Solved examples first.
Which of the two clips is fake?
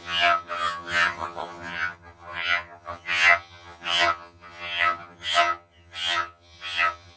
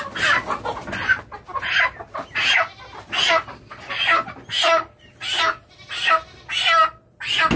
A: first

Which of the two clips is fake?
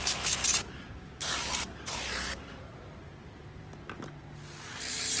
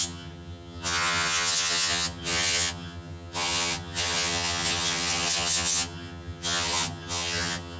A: second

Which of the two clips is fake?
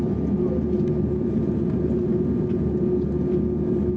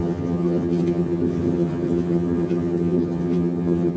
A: second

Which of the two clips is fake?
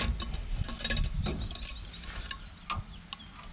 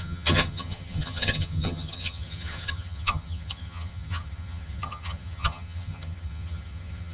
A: second